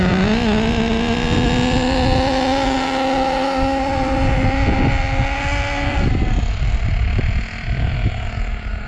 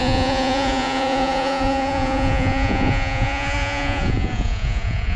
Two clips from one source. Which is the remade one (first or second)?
second